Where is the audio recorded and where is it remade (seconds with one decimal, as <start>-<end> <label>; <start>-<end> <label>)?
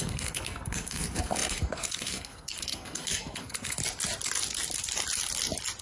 0.0-3.8 remade; 3.8-5.8 recorded